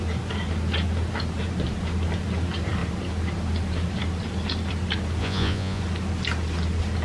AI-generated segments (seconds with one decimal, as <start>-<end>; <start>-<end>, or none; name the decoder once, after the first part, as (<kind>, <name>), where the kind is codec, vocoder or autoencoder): 5.2-5.8 (vocoder, Vocos)